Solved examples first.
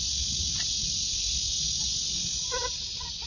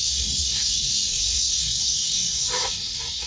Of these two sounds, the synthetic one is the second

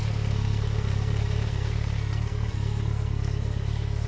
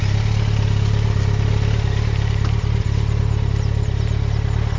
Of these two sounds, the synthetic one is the first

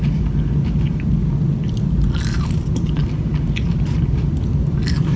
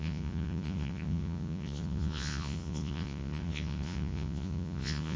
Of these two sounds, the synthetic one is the second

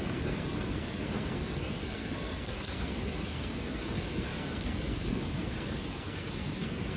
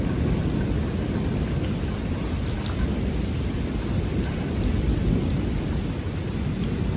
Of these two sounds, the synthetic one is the first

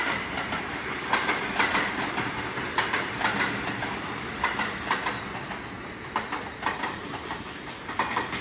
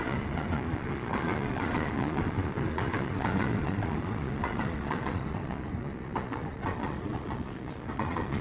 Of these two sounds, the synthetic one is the second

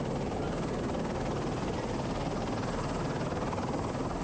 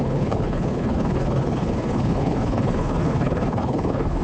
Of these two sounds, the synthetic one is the second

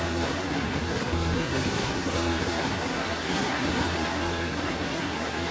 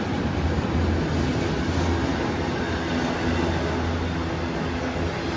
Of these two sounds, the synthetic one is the first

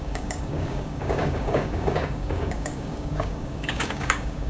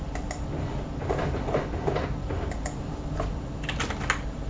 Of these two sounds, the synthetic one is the first